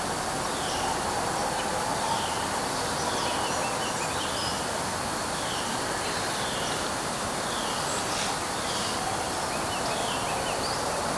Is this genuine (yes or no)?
yes